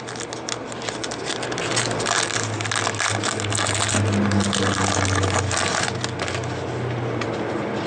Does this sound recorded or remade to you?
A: recorded